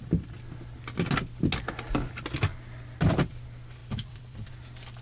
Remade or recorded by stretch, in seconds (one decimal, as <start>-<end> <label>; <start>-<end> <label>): 0.0-3.8 recorded; 3.8-4.5 remade; 4.5-5.0 recorded